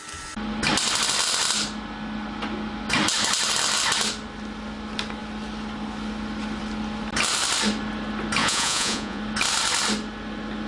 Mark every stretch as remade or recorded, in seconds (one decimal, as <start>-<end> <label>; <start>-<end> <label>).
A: 0.0-8.4 recorded; 8.4-9.2 remade; 9.2-10.7 recorded